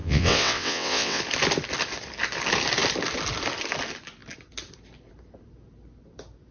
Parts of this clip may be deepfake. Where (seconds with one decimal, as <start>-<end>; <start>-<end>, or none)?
0.0-1.2